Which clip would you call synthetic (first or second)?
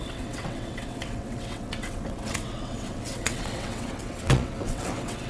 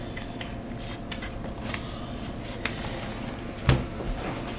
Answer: first